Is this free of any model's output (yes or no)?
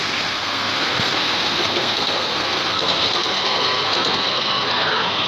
no